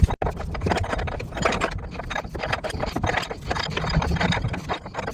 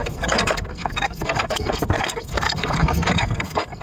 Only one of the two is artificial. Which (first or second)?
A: second